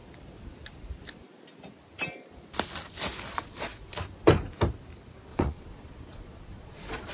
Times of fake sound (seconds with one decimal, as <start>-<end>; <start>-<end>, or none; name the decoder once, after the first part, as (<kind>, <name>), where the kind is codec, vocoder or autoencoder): 3.3-4.0 (vocoder, Vocos); 5.3-7.1